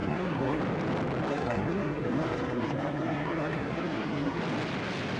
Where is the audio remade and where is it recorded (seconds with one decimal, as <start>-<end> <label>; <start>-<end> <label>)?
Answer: 0.0-0.6 remade; 0.6-1.3 recorded; 1.3-4.4 remade; 4.4-5.2 recorded